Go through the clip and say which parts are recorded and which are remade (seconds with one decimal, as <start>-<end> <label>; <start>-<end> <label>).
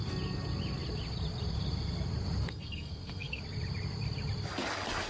0.0-2.4 recorded; 2.4-3.4 remade; 3.4-5.1 recorded